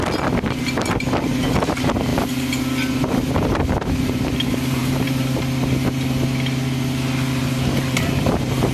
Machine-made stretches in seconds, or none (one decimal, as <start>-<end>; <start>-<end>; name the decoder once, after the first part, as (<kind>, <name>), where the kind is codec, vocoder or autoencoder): 4.8-5.4 (vocoder, BigVGAN v2); 7.4-8.7